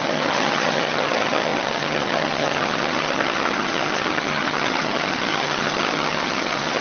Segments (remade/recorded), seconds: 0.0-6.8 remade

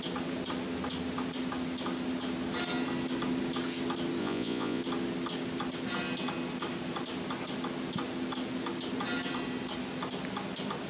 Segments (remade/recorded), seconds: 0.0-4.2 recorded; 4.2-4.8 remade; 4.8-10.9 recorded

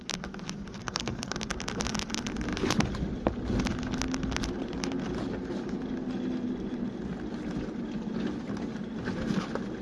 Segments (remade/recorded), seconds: 0.0-0.8 recorded; 0.8-1.3 remade; 1.3-9.8 recorded

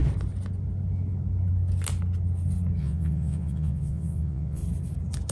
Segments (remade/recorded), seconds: 0.0-2.8 recorded; 2.8-4.6 remade; 4.6-5.3 recorded